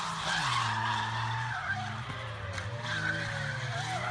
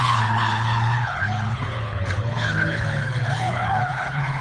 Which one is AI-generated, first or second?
second